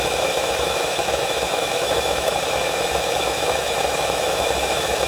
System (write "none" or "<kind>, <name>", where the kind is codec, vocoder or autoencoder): autoencoder, DAC-VAE